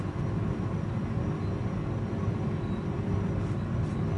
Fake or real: real